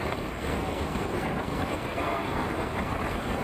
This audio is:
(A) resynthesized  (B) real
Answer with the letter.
A